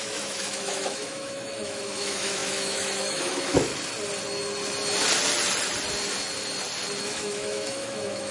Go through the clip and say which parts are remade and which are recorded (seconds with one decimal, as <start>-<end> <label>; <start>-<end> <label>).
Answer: 0.0-3.7 remade; 3.7-7.0 recorded; 7.0-8.3 remade

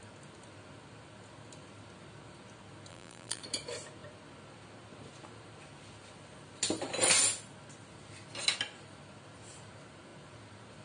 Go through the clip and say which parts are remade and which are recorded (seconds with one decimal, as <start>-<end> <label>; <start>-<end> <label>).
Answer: 0.0-2.9 recorded; 2.9-3.4 remade; 3.4-10.8 recorded

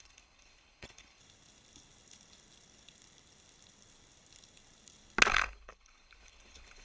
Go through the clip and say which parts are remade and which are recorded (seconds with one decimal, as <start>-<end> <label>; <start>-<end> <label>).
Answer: 0.0-1.2 remade; 1.2-5.3 recorded; 5.3-6.8 remade

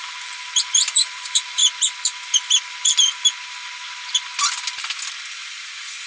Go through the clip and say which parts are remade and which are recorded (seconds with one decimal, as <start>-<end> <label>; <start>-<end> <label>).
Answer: 0.0-1.6 remade; 1.6-5.3 recorded; 5.3-6.1 remade

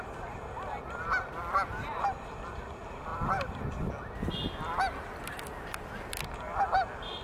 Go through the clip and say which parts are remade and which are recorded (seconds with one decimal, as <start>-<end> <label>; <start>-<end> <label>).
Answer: 0.0-7.2 recorded

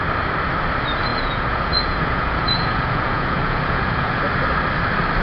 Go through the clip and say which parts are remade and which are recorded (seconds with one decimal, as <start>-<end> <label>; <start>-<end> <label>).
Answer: 0.0-1.1 recorded; 1.1-4.2 remade; 4.2-5.2 recorded

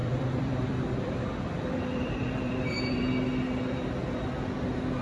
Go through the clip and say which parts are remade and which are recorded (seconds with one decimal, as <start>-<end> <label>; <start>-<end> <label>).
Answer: 0.0-3.0 remade; 3.0-5.0 recorded